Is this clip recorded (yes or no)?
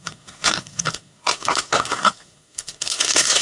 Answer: no